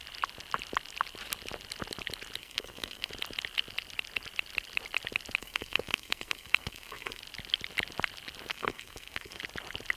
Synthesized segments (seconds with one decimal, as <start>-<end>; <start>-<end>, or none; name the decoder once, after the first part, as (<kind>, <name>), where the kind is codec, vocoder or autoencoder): 2.4-3.1 (codec, SNAC); 5.4-7.2; 8.5-9.4